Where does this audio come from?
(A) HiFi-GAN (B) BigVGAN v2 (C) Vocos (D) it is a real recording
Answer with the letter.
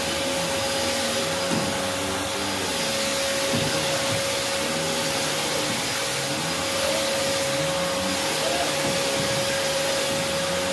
D